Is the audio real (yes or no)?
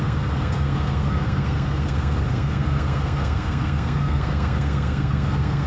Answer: no